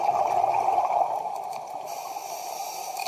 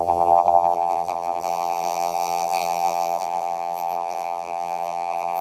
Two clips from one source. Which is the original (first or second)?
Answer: first